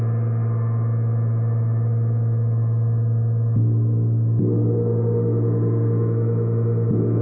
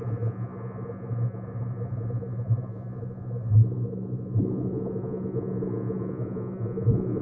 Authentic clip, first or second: first